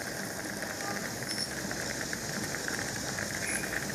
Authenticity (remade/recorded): remade